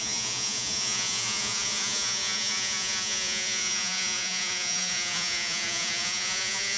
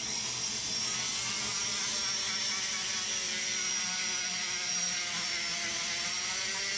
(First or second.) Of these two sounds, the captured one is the second